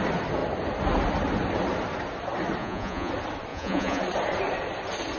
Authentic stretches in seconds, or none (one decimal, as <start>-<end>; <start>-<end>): 0.0-2.6; 3.1-3.5; 4.0-5.2